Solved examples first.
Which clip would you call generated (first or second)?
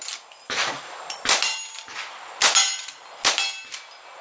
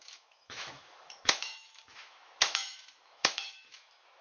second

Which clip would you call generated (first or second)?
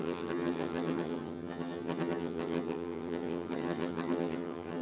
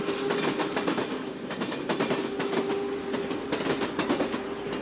first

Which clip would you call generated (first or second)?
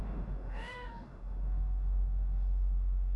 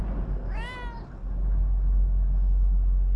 first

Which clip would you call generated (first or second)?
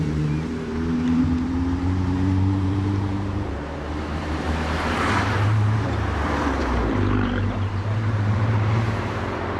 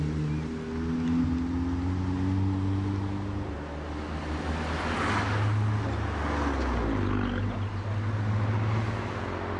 first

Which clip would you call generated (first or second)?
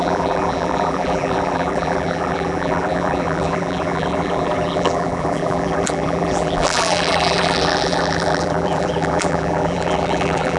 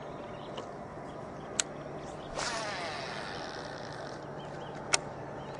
first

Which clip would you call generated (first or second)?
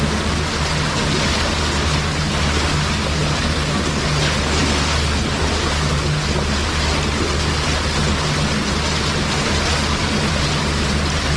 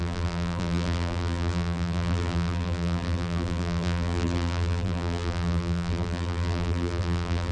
second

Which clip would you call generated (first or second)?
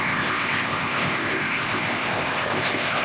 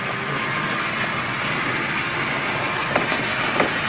first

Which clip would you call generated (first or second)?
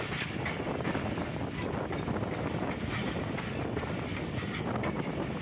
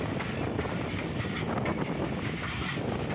second